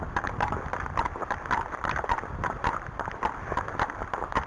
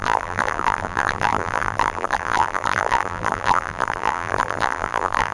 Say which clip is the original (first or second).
first